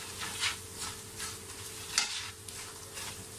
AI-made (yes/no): no